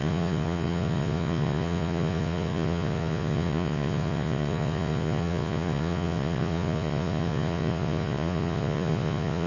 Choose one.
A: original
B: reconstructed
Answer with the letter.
B